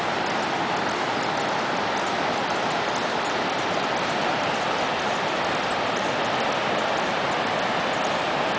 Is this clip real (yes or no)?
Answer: yes